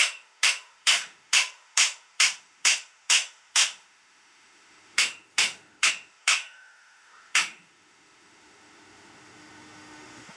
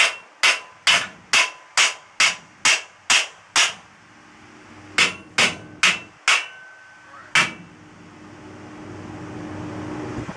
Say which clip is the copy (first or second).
first